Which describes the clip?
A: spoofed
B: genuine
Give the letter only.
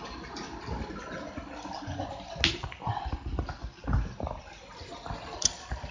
B